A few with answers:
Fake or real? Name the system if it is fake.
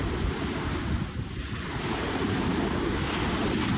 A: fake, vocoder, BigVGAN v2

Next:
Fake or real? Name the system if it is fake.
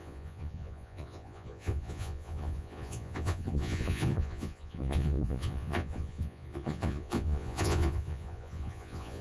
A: fake, vocoder, Vocos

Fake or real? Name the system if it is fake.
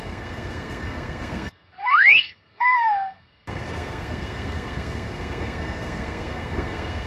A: fake, codec, SNAC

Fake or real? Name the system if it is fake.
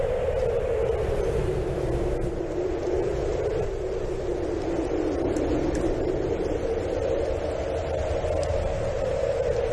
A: real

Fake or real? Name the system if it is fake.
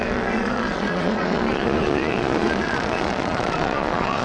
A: fake, vocoder, Vocos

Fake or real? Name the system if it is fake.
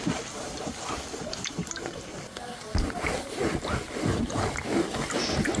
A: real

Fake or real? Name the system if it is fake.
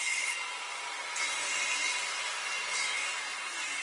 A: real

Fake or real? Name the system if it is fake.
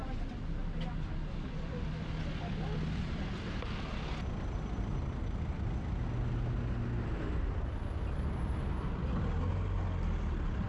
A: real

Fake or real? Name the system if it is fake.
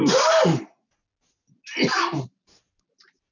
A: real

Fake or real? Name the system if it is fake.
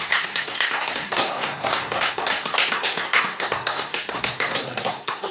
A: fake, codec, SNAC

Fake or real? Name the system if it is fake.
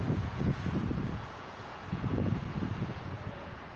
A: fake, vocoder, Vocos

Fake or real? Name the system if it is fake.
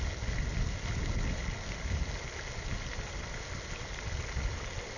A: real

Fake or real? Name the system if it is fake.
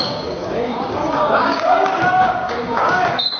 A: fake, codec, DAC